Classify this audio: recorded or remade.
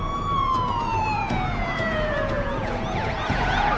remade